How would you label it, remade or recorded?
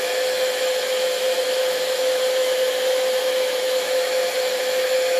remade